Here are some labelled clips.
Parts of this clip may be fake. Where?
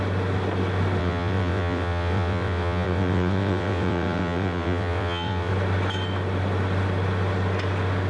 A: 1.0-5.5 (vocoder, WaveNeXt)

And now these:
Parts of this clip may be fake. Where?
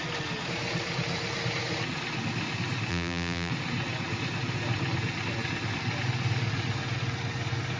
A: 2.9-3.5 (vocoder, BigVGAN v2)